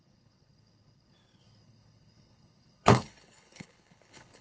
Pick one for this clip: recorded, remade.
remade